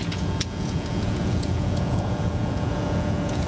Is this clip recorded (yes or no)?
no